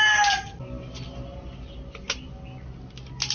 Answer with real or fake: real